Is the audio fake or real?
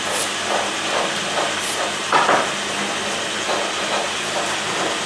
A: real